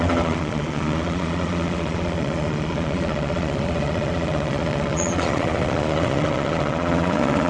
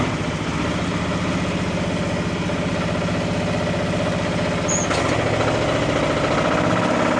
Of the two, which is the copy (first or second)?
first